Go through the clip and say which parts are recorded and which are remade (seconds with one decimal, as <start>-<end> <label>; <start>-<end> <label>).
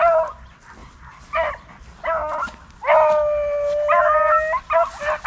0.0-5.3 recorded